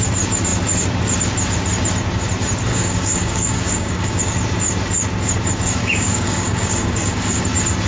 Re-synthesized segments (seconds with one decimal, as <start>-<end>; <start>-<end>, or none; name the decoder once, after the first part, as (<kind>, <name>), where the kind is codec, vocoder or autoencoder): 2.7-4.2 (codec, DAC); 5.8-7.4